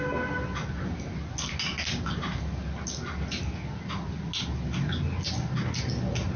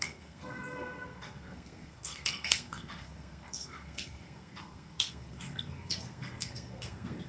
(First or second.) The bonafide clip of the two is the first